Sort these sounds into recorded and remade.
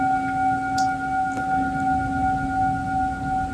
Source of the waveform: recorded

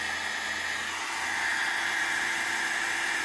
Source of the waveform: recorded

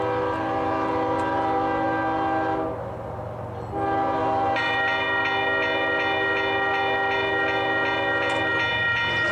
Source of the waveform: recorded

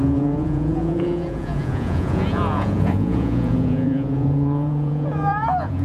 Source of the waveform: remade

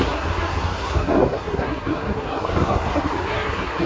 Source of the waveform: remade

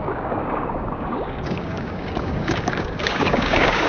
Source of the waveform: remade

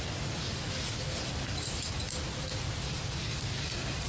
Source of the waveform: recorded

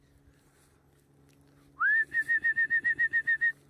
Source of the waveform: recorded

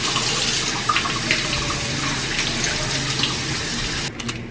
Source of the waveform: recorded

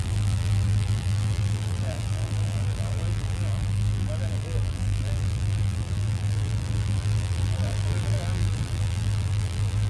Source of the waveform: remade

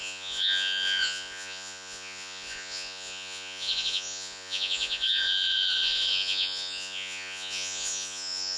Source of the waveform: remade